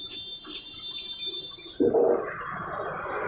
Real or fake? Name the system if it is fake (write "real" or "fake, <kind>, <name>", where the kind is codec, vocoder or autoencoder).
fake, vocoder, BigVGAN v2